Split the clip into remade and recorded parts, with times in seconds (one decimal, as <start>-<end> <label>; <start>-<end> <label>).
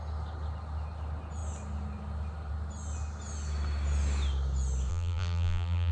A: 0.0-4.9 recorded; 4.9-5.9 remade